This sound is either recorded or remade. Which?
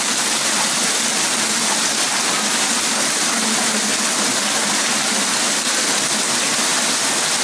recorded